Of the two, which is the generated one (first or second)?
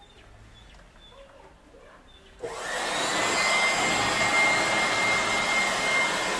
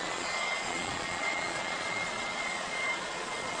second